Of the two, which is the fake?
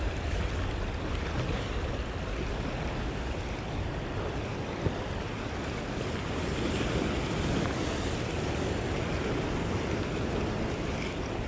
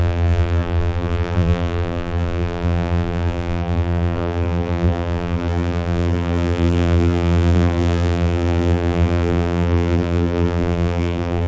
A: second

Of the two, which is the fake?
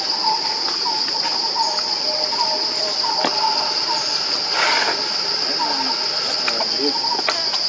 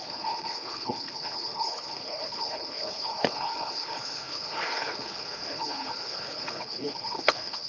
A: second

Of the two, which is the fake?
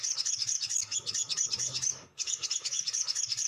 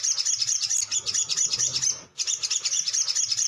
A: first